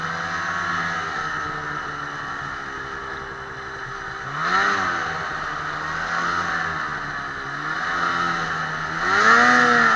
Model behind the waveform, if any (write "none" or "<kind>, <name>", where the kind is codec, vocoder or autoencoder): none